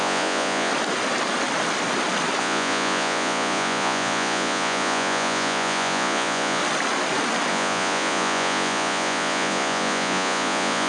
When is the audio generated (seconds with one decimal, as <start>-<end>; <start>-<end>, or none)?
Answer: 0.0-0.7; 2.4-6.6; 7.5-10.9